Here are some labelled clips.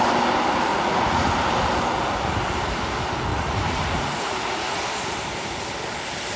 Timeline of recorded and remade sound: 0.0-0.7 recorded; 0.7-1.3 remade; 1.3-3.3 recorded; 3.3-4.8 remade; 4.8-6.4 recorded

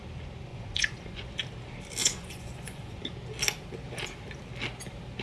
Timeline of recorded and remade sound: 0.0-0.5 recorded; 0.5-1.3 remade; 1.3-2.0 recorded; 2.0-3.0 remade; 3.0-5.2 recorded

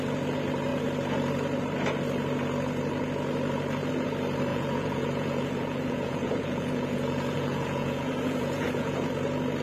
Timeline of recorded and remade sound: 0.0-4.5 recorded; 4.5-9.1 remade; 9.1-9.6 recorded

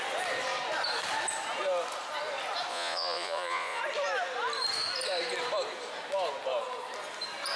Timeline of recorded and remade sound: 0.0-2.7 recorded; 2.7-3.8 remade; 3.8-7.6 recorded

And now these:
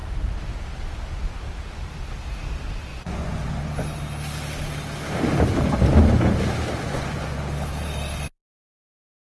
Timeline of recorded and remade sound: 0.0-2.9 recorded; 2.9-3.6 remade; 3.6-6.8 recorded; 6.8-7.4 remade; 7.4-9.4 recorded

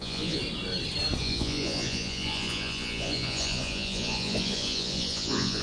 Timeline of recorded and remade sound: 0.0-0.4 remade; 0.4-1.2 recorded; 1.2-5.6 remade

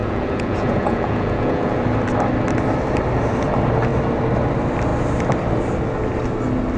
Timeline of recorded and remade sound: 0.0-1.8 remade; 1.8-6.8 recorded